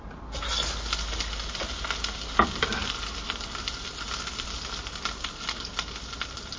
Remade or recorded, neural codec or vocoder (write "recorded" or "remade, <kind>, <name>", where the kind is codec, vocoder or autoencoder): recorded